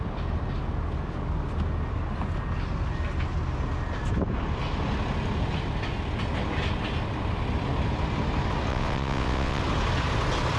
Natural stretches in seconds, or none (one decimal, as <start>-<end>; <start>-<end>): 0.0-8.7; 9.6-10.6